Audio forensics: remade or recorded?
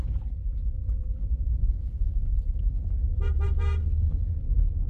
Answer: recorded